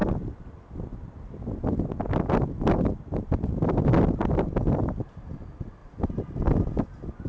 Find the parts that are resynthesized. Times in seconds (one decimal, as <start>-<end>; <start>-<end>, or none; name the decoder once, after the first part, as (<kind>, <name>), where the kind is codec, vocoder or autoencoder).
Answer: 2.8-7.3 (vocoder, BigVGAN v2)

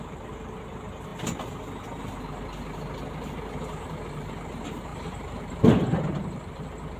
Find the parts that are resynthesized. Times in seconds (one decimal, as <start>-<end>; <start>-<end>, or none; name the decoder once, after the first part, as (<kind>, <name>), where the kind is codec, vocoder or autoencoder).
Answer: 0.0-1.1 (vocoder, BigVGAN v2); 3.8-7.0

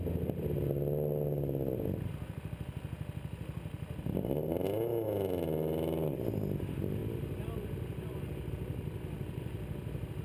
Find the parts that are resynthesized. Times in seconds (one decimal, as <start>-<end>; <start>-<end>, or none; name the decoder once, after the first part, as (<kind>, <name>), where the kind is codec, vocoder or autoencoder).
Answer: none

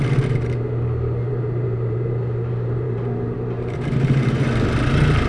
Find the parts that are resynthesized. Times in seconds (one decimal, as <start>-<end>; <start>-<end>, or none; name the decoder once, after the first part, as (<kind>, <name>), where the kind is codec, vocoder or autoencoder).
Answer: 1.3-4.5 (vocoder, BigVGAN v2)

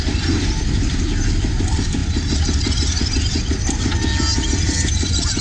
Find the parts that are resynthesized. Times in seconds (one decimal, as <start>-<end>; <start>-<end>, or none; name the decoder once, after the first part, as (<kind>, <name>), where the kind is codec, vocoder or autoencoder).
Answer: 0.0-2.0 (vocoder, BigVGAN v2); 4.6-5.4

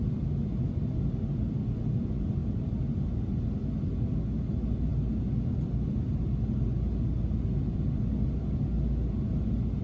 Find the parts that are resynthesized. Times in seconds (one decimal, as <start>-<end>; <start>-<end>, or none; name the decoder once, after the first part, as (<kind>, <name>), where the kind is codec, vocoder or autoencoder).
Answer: none

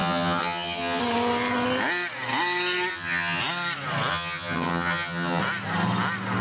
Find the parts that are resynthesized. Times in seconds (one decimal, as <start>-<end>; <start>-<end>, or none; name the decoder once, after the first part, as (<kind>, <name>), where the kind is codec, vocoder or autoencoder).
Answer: 0.0-1.0 (vocoder, HiFi-GAN); 2.9-3.4; 4.1-5.4

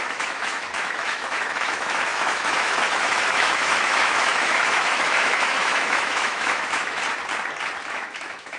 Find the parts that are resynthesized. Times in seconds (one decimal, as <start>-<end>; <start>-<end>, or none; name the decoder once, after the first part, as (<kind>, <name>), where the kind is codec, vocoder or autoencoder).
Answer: 0.0-7.0 (autoencoder, DAC-VAE); 7.8-8.6